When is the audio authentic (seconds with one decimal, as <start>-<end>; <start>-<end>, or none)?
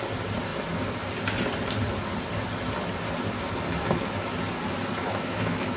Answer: 0.0-5.0